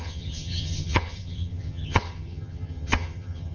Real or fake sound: fake